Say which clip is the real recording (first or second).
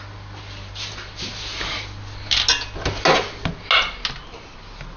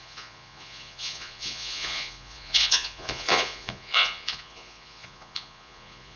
first